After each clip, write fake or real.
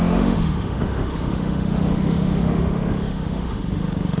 fake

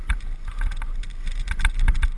real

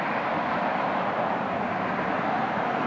real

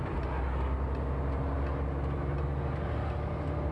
real